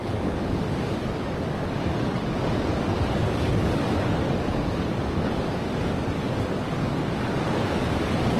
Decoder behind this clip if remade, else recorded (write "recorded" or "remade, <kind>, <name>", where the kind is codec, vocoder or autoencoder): remade, codec, DAC